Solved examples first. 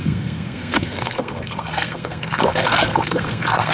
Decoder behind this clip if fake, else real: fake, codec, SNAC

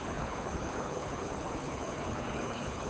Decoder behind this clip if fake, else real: fake, codec, HILCodec